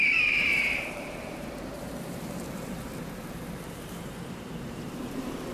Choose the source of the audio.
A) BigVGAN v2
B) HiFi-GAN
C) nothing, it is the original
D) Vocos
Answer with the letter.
A